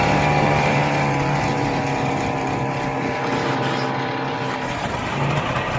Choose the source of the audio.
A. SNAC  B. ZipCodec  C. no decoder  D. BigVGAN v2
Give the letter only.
D